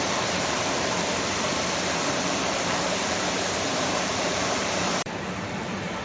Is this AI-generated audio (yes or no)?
yes